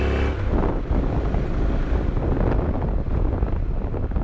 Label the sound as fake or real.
real